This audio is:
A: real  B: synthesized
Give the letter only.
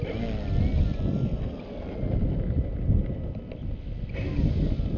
A